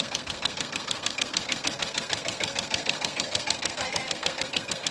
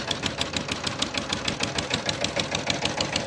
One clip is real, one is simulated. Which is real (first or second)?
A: second